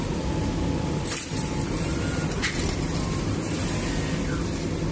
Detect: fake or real real